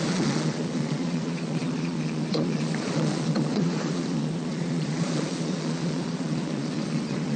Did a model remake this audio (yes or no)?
yes